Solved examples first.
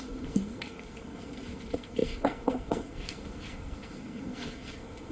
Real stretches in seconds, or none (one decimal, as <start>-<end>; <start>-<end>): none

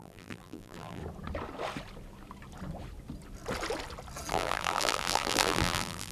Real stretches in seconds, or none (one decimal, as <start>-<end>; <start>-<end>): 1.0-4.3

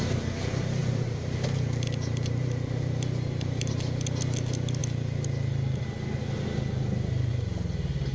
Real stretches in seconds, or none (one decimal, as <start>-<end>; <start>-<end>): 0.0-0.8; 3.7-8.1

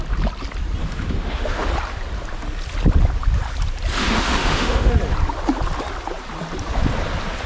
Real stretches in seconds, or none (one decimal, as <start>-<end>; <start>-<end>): 0.0-0.8; 1.7-3.9; 4.9-7.5

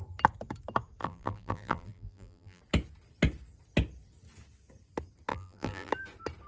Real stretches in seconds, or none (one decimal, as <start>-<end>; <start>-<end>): 0.0-1.0; 2.6-5.3; 5.9-6.5